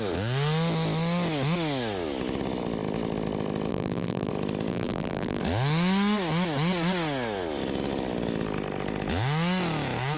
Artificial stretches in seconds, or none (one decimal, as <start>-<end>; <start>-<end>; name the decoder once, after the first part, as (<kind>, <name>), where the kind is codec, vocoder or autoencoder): 3.7-4.3 (vocoder, BigVGAN v2); 4.7-5.4